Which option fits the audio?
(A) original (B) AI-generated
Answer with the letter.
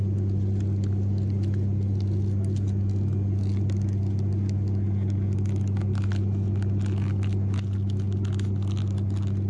A